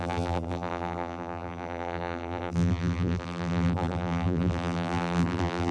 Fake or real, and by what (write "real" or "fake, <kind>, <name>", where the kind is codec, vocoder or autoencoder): fake, vocoder, BigVGAN v2